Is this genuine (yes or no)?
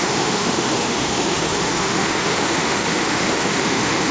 no